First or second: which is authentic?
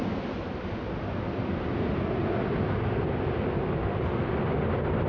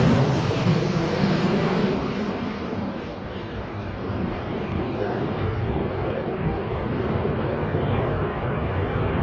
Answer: first